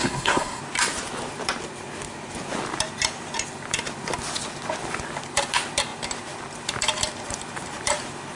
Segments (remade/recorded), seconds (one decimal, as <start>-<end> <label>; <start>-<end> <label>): 0.0-0.6 remade; 0.6-8.4 recorded